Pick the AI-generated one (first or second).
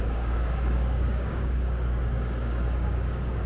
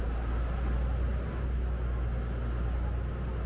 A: first